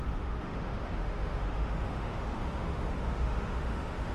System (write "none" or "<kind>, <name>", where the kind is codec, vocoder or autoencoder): autoencoder, DAC-VAE